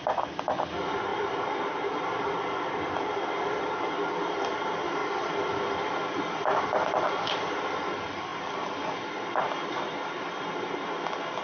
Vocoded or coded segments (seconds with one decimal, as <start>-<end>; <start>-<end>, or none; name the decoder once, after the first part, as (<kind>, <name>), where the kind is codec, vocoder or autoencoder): 1.1-3.8 (vocoder, BigVGAN v2); 5.0-5.6